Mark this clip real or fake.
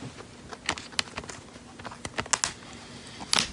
real